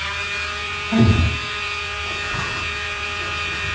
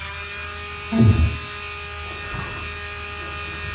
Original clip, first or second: second